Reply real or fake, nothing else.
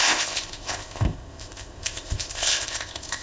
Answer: fake